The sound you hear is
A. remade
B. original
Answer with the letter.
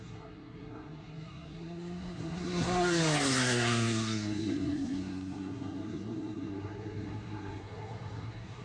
A